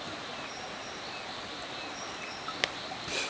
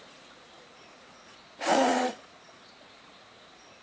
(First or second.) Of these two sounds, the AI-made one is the second